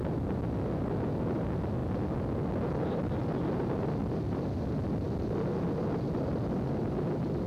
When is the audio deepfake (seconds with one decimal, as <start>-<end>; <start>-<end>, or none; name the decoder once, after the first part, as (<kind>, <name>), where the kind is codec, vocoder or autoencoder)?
none